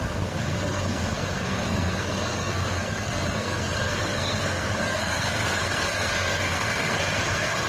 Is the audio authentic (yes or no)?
no